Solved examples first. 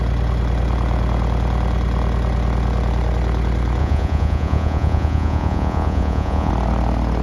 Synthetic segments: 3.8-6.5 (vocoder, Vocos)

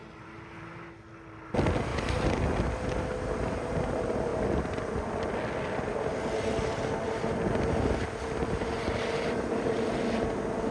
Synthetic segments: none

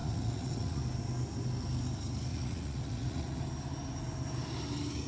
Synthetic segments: 0.0-0.8 (vocoder, Vocos); 2.3-3.4

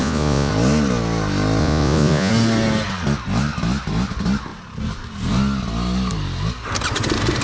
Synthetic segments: 0.0-0.5 (vocoder, Vocos); 1.6-2.3